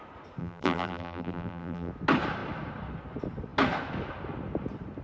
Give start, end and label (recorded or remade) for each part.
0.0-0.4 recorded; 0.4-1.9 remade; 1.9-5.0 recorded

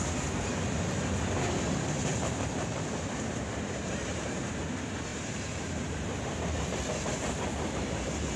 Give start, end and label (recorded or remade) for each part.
0.0-2.1 recorded; 2.1-4.6 remade; 4.6-5.1 recorded; 5.1-6.6 remade; 6.6-8.4 recorded